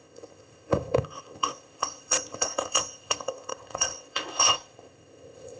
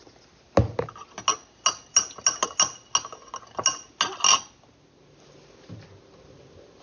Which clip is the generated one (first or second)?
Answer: first